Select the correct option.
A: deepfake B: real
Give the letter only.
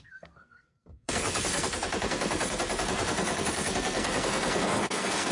A